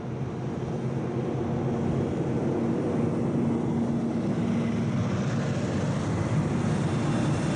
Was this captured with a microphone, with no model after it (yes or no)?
yes